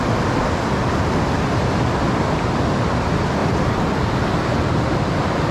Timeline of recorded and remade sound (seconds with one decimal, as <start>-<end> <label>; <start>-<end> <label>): 0.0-5.5 recorded